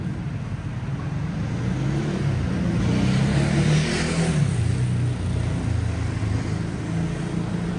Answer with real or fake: real